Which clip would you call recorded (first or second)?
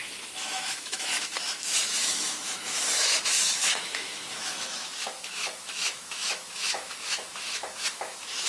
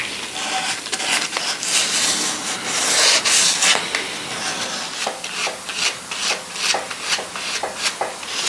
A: second